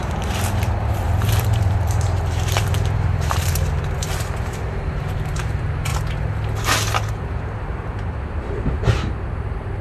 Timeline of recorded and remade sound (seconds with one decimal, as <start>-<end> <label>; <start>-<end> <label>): 0.0-5.9 remade; 5.9-7.1 recorded; 7.1-9.8 remade